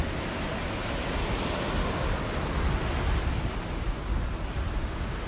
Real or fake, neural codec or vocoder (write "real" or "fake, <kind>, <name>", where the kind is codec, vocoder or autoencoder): real